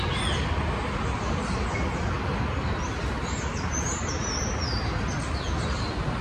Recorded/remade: recorded